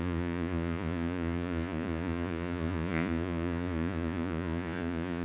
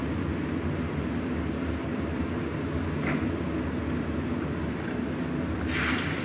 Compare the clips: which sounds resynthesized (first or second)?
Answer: first